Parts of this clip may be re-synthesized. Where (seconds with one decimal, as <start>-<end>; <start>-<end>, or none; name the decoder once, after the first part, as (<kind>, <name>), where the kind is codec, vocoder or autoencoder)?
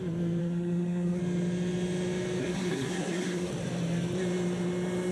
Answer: 0.4-1.2 (codec, SNAC); 2.4-3.5